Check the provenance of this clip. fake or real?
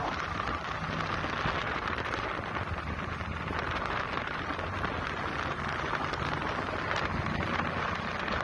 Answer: real